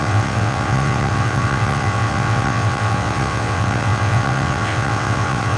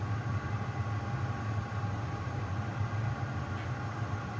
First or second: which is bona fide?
second